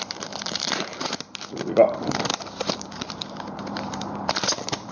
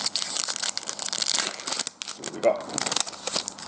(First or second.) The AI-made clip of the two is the first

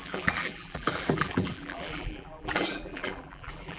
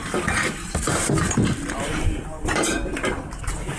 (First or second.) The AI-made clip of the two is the first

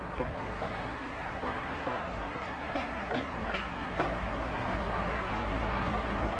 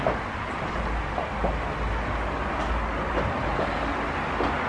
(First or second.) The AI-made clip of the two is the first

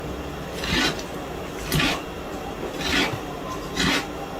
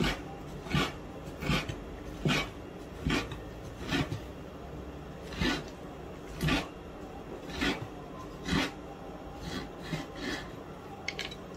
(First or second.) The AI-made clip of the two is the first